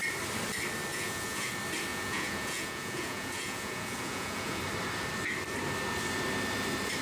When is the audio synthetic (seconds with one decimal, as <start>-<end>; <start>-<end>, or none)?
0.9-1.5; 1.9-4.6